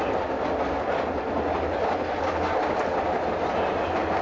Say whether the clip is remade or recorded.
recorded